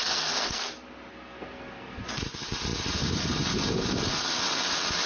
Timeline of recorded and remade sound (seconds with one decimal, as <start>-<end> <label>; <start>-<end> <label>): 0.0-0.7 remade; 0.7-1.1 recorded; 1.1-2.2 remade; 2.2-5.1 recorded